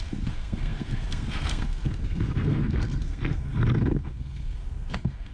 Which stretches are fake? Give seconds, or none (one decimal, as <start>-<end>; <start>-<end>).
0.0-5.3